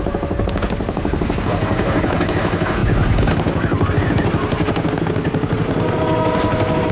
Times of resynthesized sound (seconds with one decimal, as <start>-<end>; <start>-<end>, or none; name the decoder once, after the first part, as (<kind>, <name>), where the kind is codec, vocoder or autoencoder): none